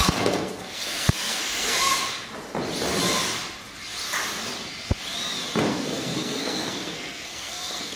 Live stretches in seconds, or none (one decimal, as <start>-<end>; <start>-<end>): 1.9-5.7